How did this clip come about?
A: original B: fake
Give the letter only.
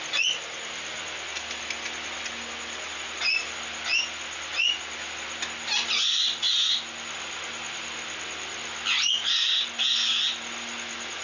A